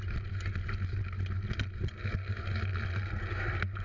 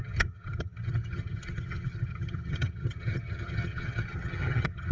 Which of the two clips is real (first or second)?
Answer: first